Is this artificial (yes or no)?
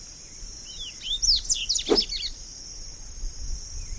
no